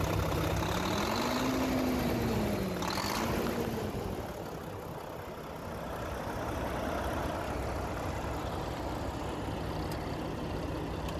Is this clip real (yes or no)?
yes